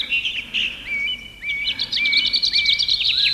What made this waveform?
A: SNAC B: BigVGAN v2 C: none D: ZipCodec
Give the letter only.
C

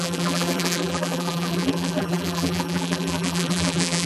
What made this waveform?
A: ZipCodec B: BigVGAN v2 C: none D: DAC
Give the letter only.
B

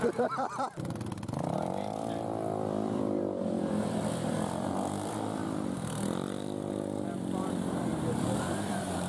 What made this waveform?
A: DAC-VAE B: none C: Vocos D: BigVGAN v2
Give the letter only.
D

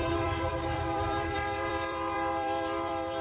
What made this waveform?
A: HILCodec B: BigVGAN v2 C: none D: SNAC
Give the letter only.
B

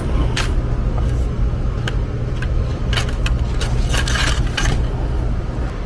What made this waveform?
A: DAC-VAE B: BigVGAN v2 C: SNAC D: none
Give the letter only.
D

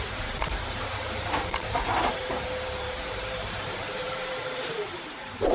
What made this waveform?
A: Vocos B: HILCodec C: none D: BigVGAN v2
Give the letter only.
D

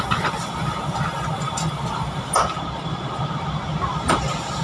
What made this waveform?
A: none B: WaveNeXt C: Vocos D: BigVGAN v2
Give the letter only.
A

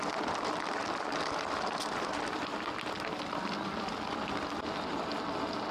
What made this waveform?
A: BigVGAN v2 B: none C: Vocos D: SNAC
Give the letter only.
B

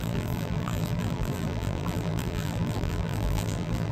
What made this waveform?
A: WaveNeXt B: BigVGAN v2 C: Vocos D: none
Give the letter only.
B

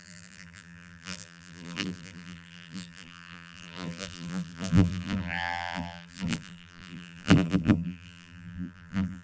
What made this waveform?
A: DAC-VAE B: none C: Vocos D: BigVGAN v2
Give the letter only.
D